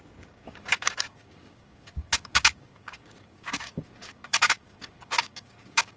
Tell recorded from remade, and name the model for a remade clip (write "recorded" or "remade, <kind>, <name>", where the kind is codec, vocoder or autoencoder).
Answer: remade, codec, DAC